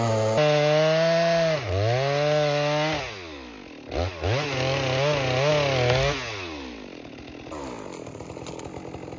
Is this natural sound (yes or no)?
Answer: yes